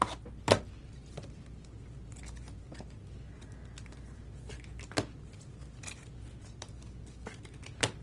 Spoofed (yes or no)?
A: no